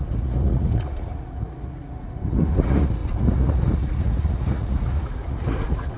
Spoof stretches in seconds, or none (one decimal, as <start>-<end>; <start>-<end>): 0.0-6.0